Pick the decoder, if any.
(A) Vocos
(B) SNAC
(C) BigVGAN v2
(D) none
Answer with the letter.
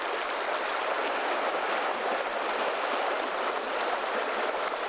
D